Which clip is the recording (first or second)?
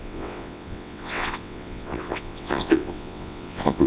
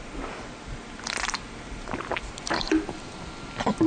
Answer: second